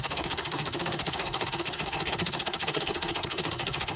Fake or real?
fake